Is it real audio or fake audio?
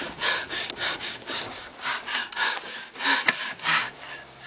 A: fake